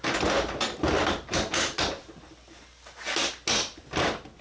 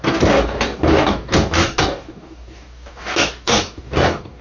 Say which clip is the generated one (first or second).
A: second